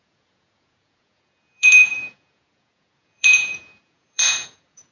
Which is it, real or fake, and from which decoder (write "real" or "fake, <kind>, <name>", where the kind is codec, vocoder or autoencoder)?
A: fake, vocoder, Vocos